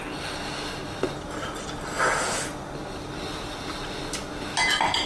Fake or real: real